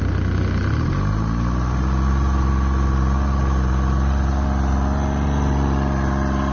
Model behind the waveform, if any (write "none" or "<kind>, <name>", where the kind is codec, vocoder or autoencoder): none